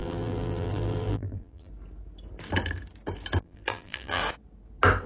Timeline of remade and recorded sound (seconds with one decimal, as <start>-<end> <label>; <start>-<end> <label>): 0.0-1.7 remade; 1.7-3.4 recorded; 3.4-4.2 remade; 4.2-5.1 recorded